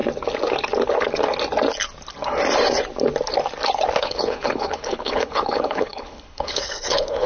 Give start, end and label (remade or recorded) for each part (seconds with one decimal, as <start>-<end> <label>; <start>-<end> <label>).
0.0-4.0 recorded; 4.0-7.3 remade